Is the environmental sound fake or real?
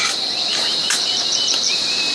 fake